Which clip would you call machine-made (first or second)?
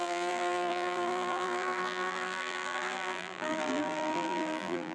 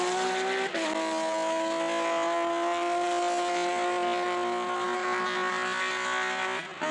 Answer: first